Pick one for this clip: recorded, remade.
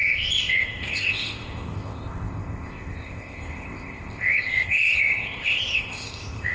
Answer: remade